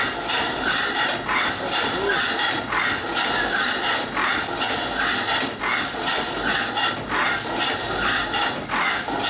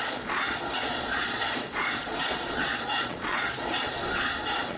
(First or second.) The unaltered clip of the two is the first